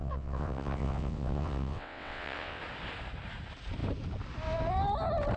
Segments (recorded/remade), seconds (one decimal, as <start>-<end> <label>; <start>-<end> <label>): 0.0-2.6 remade; 2.6-5.4 recorded